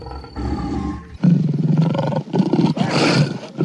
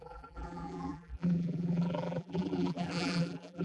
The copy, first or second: second